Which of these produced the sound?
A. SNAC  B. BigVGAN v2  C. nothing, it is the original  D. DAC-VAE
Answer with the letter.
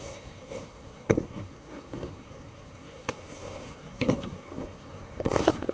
A